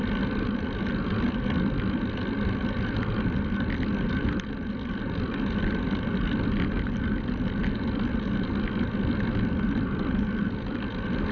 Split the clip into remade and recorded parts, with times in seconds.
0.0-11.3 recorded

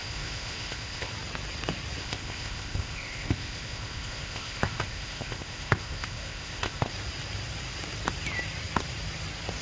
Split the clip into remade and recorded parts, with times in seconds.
0.0-1.1 remade; 1.1-2.0 recorded; 2.0-6.9 remade; 6.9-9.6 recorded

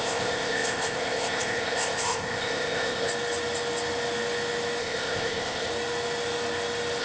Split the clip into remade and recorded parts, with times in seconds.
0.0-3.1 remade; 3.1-4.8 recorded; 4.8-5.7 remade; 5.7-7.0 recorded

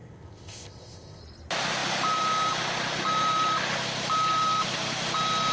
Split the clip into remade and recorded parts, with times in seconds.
0.0-1.2 remade; 1.2-5.5 recorded

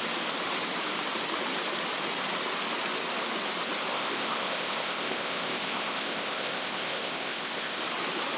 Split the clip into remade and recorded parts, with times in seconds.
0.0-3.9 recorded; 3.9-7.8 remade; 7.8-8.4 recorded